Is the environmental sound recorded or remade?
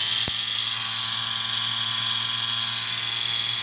recorded